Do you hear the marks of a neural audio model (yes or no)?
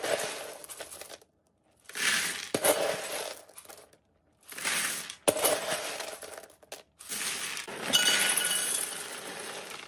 no